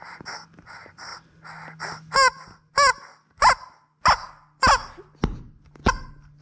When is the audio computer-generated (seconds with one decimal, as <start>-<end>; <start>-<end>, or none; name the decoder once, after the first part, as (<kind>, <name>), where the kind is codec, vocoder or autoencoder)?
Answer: none